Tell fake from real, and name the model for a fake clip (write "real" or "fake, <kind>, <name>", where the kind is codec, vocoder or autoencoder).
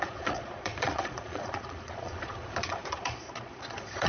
fake, vocoder, Vocos